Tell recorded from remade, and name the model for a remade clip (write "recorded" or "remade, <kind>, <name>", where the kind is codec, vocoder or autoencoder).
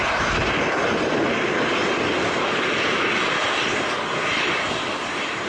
recorded